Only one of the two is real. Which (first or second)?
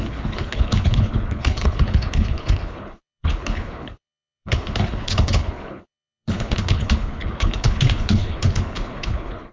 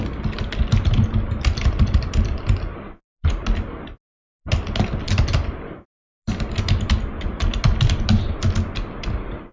second